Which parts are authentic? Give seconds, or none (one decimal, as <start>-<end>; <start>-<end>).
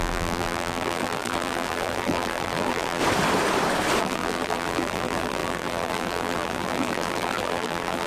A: 3.0-4.0